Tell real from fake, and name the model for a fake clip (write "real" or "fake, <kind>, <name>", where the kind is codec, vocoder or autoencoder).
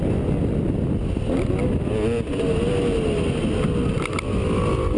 real